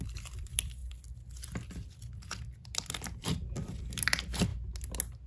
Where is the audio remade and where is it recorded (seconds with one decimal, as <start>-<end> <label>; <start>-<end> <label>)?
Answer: 0.0-4.5 remade; 4.5-5.3 recorded